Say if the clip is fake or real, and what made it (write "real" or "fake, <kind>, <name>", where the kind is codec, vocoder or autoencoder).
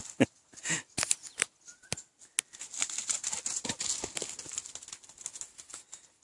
real